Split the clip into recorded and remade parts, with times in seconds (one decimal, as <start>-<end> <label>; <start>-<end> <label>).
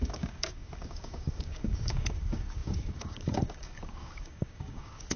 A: 0.0-5.2 remade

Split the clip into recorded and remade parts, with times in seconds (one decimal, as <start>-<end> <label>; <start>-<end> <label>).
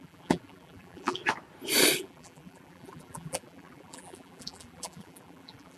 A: 0.0-1.2 remade; 1.2-2.0 recorded; 2.0-5.8 remade